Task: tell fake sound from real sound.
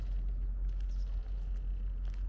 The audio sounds real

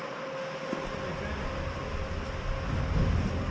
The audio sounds real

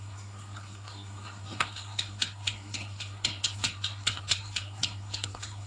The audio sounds fake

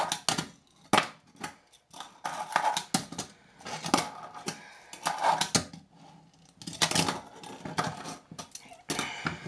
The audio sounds real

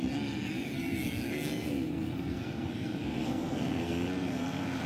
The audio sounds fake